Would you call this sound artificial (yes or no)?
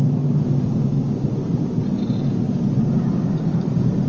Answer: no